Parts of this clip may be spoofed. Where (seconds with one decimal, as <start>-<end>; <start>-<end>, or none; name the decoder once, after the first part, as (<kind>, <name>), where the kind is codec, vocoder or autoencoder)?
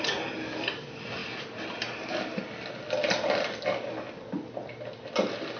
none